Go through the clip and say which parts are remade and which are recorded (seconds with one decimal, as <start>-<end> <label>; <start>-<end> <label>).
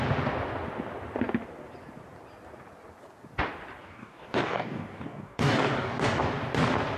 0.0-3.8 recorded; 3.8-6.3 remade; 6.3-7.0 recorded